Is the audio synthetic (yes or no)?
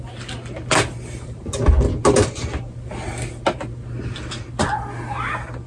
no